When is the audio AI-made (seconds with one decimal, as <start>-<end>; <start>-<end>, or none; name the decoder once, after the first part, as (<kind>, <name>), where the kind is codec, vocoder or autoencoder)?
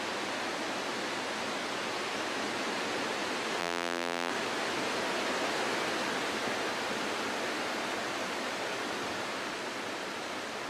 3.6-4.3 (vocoder, BigVGAN v2)